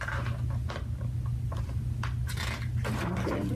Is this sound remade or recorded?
recorded